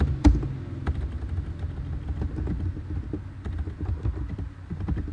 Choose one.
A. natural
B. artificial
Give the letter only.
A